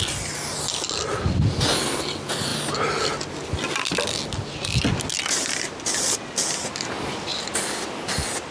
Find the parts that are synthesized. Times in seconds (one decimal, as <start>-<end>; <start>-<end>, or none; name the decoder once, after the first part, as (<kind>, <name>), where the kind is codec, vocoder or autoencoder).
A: none